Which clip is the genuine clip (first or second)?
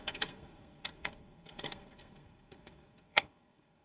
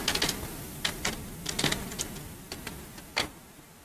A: second